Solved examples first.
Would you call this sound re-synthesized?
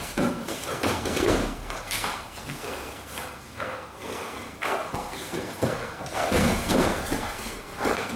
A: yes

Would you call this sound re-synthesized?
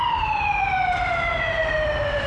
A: no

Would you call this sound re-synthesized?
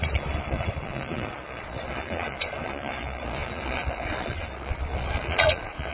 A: yes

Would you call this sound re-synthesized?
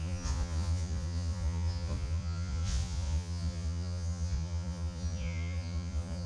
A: yes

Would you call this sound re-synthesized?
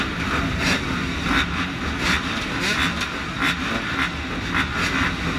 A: no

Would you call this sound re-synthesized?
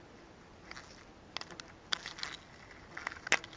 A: no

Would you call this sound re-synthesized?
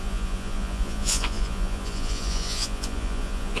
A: yes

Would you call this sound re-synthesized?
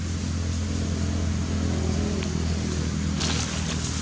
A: no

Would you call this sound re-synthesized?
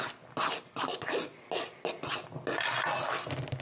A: no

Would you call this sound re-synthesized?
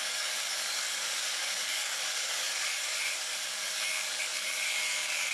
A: yes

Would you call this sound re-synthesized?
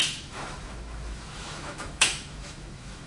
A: yes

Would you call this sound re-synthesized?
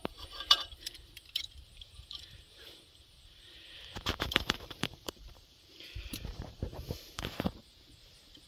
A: yes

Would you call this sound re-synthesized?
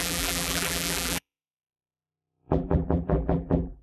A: yes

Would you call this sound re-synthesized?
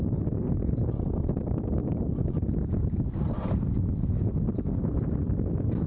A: no